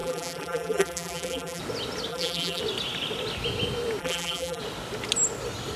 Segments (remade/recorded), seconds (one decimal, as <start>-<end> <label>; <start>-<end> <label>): 0.0-1.6 remade; 1.6-2.1 recorded; 2.1-2.6 remade; 2.6-4.0 recorded; 4.0-4.6 remade; 4.6-5.8 recorded